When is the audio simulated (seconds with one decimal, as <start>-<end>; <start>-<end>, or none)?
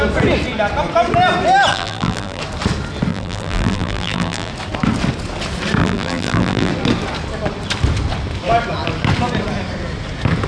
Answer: 1.7-2.4; 3.1-4.5; 5.8-6.7